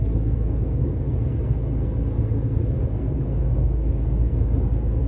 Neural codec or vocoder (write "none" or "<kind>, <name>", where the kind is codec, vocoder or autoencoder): codec, SNAC